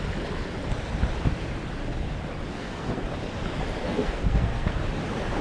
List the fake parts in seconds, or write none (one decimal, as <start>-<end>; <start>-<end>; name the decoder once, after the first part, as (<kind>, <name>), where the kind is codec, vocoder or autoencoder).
2.5-3.0 (codec, SNAC); 3.8-4.8